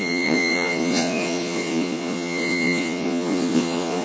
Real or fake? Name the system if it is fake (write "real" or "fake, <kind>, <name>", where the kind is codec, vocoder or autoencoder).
fake, vocoder, Vocos